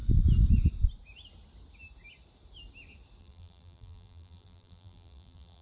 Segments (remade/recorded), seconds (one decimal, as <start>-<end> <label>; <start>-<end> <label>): 0.0-3.2 recorded; 3.2-5.6 remade